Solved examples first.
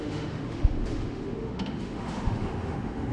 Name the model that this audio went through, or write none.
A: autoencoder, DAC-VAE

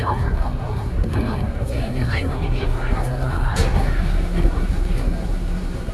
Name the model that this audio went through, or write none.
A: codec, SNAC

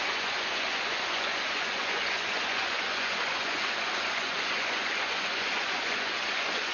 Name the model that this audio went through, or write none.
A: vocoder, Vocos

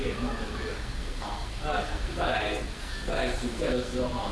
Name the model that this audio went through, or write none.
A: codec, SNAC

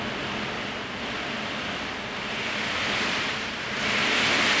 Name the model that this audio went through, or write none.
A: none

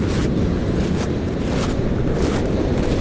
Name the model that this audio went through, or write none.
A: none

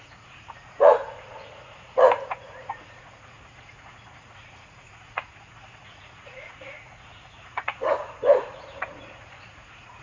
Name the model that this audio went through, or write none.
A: vocoder, Vocos